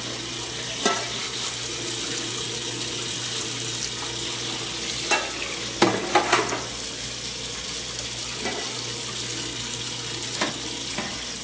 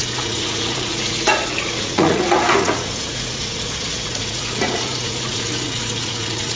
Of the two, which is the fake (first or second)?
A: second